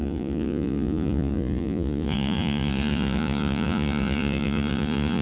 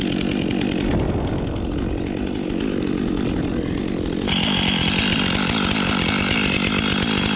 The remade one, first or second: first